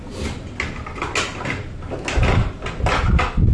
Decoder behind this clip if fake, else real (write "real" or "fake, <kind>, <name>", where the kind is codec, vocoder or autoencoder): real